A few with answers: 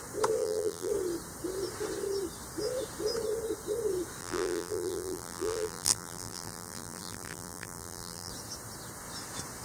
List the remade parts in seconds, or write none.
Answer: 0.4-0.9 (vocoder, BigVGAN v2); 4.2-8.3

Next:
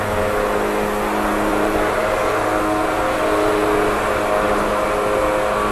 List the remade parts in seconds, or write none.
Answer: 1.5-2.6 (vocoder, BigVGAN v2)

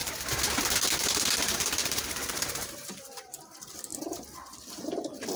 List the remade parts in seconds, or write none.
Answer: 1.0-3.9 (vocoder, BigVGAN v2); 4.7-5.4

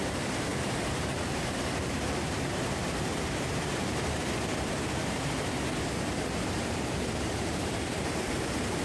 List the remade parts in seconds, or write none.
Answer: 0.0-0.5 (vocoder, BigVGAN v2); 1.2-4.2; 7.3-8.8

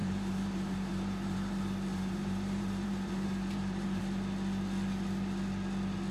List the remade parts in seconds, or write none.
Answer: 0.0-1.5 (vocoder, BigVGAN v2); 1.9-4.0

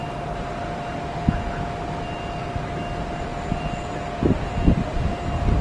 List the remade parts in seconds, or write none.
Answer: 3.3-5.0 (vocoder, BigVGAN v2)